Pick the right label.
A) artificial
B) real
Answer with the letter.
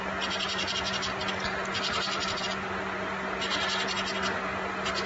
B